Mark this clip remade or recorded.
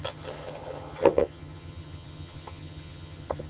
remade